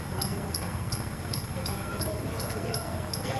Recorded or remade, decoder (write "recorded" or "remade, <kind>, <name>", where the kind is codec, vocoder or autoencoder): remade, codec, SNAC